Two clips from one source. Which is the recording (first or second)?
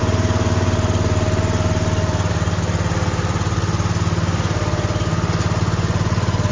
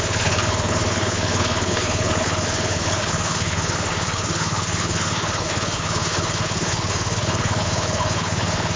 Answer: first